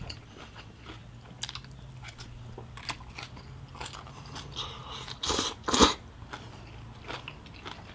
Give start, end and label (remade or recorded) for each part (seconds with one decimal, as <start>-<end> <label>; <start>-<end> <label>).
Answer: 0.0-7.9 recorded